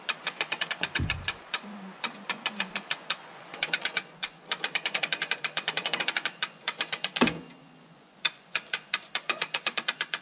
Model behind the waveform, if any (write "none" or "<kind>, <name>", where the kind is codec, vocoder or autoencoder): vocoder, Vocos